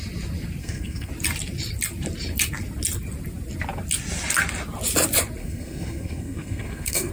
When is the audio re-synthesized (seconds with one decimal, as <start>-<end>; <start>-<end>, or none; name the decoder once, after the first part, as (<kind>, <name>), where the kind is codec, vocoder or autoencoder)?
0.6-1.1 (codec, SNAC); 5.4-7.1